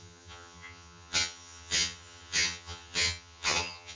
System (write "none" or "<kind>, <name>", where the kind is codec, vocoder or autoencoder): vocoder, HiFi-GAN